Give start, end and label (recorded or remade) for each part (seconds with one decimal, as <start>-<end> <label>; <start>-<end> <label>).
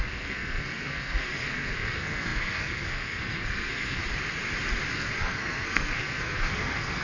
0.0-4.0 remade; 4.0-4.9 recorded; 4.9-7.0 remade